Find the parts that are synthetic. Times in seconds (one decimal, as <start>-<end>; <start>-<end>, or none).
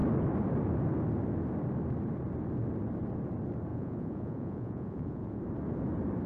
3.7-5.4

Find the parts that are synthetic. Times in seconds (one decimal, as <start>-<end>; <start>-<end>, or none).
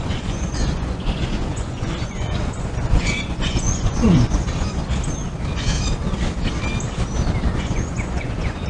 0.0-4.8; 7.5-8.7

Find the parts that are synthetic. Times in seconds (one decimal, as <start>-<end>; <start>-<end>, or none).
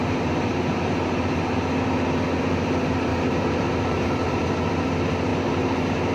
0.0-1.2; 3.1-4.5; 5.3-6.1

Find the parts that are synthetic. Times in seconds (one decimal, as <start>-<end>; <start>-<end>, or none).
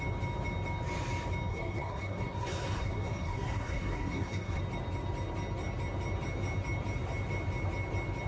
1.5-4.6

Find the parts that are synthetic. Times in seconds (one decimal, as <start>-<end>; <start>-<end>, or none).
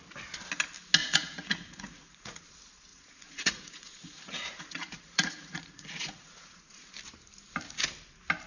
1.0-2.4; 2.9-6.9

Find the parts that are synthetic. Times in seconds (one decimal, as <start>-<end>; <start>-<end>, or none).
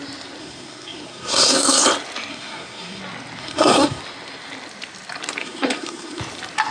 0.4-1.8; 2.3-3.0; 3.4-4.0; 5.4-6.2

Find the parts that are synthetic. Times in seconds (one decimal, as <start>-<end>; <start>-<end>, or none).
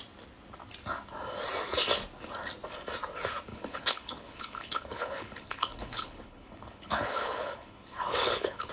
3.5-8.7